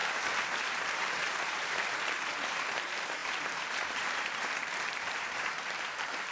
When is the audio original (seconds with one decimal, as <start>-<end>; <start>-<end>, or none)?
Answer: none